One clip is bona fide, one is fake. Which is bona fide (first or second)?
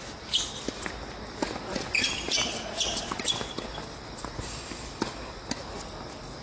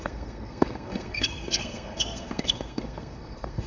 first